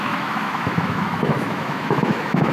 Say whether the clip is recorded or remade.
remade